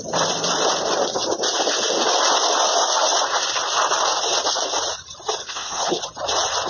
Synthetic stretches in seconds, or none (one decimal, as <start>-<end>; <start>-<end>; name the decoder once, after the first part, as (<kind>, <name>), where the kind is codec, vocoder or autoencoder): 5.4-6.0 (codec, HILCodec)